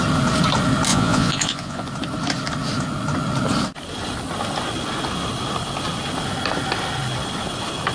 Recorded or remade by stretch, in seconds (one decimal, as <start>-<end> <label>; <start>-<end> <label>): 0.0-0.9 recorded; 0.9-1.9 remade; 1.9-7.9 recorded